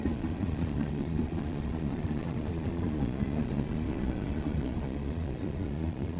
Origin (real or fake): fake